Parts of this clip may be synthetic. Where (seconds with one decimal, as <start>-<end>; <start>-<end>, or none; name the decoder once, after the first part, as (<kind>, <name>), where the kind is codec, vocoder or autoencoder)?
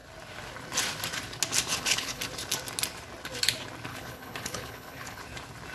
1.7-2.2 (codec, HILCodec); 3.9-5.2